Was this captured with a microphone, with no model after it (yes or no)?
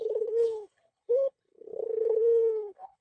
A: no